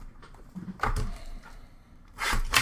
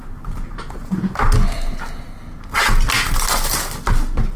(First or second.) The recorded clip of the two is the second